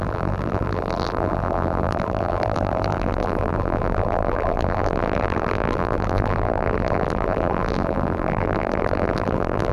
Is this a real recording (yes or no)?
no